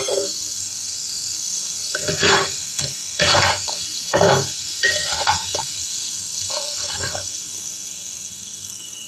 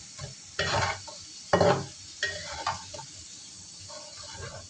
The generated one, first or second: first